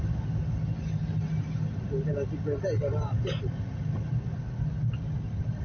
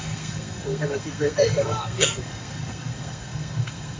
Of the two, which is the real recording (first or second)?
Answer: first